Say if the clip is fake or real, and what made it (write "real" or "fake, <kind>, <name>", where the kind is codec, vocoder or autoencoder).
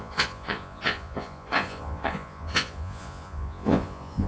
fake, vocoder, Vocos